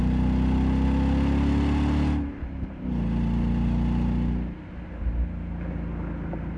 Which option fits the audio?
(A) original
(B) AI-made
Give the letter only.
A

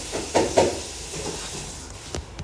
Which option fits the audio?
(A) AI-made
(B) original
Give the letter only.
B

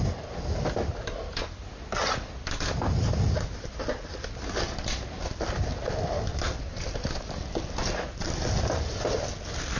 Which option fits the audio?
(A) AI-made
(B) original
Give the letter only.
B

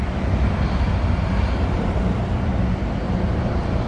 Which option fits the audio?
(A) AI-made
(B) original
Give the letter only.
B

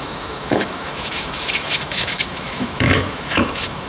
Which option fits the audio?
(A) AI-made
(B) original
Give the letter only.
A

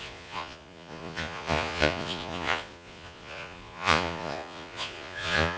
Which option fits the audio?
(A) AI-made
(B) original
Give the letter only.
A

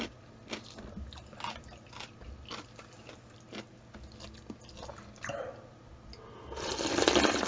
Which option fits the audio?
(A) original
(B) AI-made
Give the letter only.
A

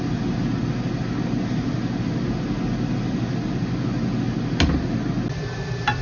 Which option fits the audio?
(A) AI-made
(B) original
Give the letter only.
B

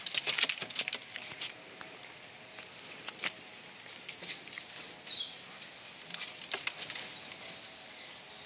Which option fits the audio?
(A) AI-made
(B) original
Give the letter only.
B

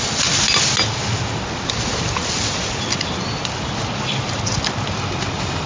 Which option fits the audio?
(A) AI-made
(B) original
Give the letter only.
B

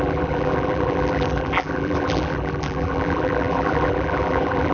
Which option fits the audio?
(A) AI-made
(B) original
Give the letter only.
A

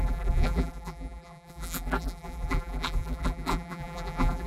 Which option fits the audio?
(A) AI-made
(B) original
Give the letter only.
A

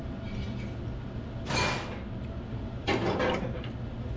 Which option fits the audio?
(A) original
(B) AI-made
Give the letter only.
A